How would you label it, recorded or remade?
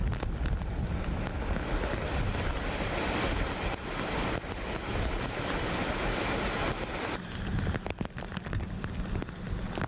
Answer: recorded